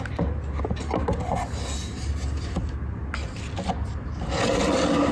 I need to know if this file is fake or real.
real